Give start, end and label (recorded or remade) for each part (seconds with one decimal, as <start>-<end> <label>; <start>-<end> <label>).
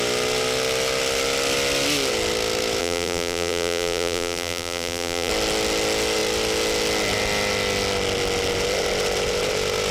0.0-2.8 recorded; 2.8-5.3 remade; 5.3-9.9 recorded